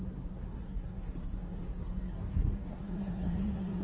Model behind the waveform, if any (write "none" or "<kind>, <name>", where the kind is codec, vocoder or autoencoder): codec, SNAC